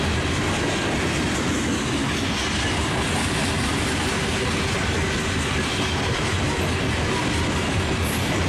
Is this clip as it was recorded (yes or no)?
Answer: yes